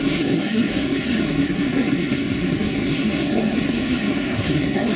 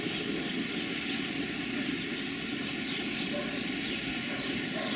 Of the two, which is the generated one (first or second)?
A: first